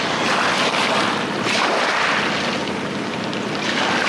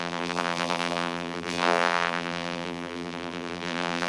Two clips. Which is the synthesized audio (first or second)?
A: second